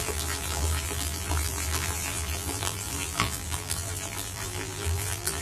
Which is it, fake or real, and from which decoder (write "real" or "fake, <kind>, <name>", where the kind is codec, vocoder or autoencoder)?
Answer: fake, vocoder, BigVGAN v2